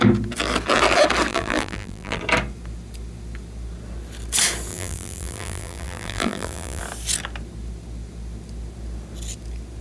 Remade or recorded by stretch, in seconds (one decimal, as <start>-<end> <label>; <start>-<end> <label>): 0.0-1.3 recorded; 1.3-2.2 remade; 2.2-4.7 recorded; 4.7-6.8 remade; 6.8-9.8 recorded